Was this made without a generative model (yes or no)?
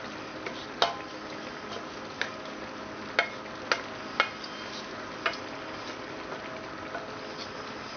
yes